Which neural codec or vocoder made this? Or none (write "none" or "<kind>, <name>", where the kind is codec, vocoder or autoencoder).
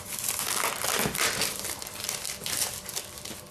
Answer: vocoder, BigVGAN v2